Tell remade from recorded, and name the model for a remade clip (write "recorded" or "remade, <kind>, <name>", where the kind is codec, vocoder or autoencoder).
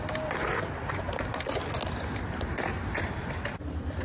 remade, vocoder, BigVGAN v2